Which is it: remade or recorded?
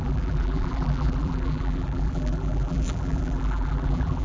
remade